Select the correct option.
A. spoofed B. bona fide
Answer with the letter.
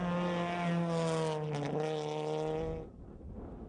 B